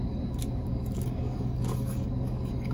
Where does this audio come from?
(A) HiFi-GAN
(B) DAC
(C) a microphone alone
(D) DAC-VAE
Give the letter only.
B